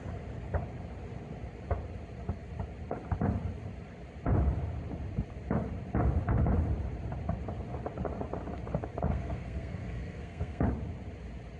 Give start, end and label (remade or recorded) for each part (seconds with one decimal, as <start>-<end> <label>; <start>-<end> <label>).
0.0-9.1 recorded; 9.1-10.6 remade; 10.6-11.6 recorded